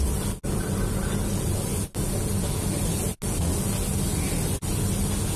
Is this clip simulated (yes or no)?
no